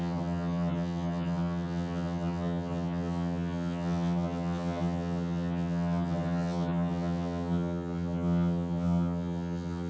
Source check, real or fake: fake